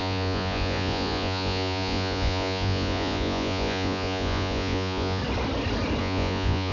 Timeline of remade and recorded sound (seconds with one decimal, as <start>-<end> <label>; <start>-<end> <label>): 0.0-5.2 remade; 5.2-6.0 recorded; 6.0-6.7 remade